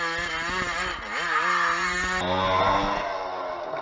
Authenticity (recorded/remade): recorded